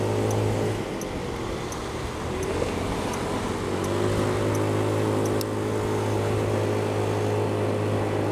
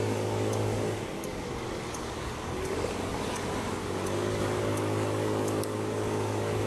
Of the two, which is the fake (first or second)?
second